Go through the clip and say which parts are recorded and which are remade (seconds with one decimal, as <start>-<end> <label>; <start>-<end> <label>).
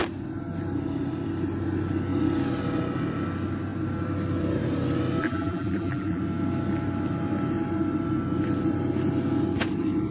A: 0.0-5.2 recorded; 5.2-6.2 remade; 6.2-10.1 recorded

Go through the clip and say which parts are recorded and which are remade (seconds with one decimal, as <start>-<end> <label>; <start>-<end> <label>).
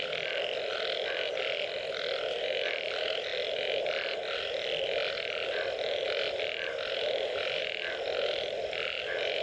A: 0.0-9.4 recorded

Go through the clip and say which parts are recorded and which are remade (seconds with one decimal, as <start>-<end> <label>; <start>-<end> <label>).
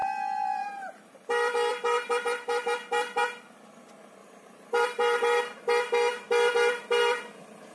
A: 0.0-4.2 recorded; 4.2-5.4 remade; 5.4-7.7 recorded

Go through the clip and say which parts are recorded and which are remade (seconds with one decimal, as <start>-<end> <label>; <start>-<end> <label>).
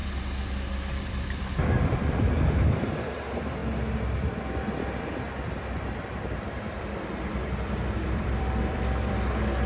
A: 0.0-0.9 recorded; 0.9-3.6 remade; 3.6-6.5 recorded; 6.5-9.7 remade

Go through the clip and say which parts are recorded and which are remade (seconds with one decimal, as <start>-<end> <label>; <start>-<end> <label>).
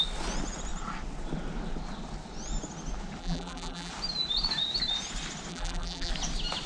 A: 0.0-3.2 recorded; 3.2-3.9 remade; 3.9-5.5 recorded; 5.5-6.1 remade; 6.1-6.7 recorded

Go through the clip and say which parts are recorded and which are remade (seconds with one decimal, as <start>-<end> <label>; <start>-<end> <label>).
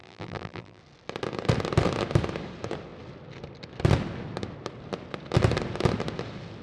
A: 0.0-0.8 remade; 0.8-6.6 recorded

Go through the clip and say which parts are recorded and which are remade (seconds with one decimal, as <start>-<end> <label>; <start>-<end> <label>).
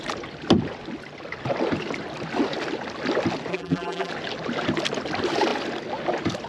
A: 0.0-3.5 recorded; 3.5-4.1 remade; 4.1-6.5 recorded